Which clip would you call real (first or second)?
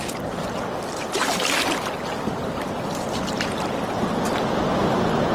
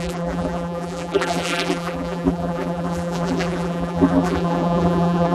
first